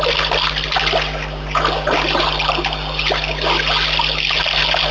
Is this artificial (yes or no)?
no